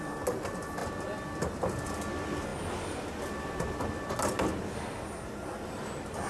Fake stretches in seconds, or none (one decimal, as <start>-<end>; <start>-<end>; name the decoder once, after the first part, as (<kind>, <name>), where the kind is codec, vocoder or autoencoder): none